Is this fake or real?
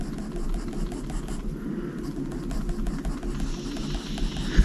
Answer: real